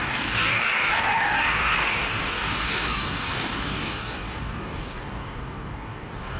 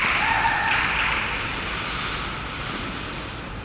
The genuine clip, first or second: second